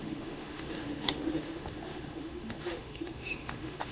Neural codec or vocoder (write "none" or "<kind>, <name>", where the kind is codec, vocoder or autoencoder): autoencoder, DAC-VAE